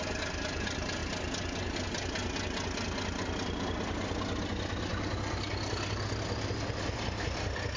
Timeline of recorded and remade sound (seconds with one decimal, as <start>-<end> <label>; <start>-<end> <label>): 0.0-7.8 recorded